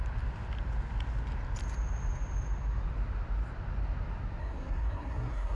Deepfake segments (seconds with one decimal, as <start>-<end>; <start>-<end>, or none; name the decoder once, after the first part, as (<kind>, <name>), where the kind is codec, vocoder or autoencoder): 4.4-5.6 (codec, SNAC)